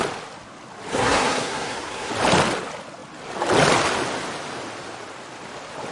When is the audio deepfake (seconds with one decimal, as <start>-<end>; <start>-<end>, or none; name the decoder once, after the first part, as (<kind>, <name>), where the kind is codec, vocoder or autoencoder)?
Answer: 0.9-2.1 (codec, SNAC)